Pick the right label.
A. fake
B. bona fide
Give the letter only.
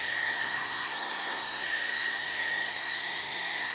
A